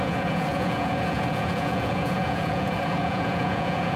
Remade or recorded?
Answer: remade